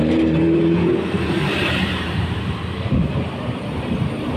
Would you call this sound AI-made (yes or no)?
yes